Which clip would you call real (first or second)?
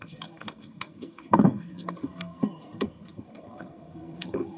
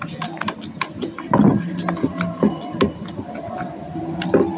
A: second